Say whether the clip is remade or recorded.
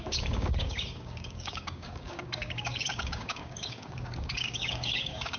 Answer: remade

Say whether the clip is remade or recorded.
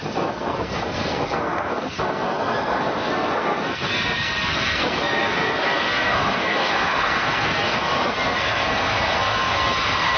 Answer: remade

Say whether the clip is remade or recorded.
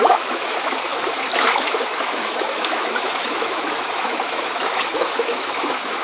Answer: remade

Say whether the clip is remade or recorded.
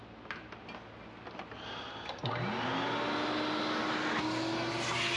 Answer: recorded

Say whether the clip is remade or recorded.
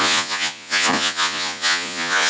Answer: remade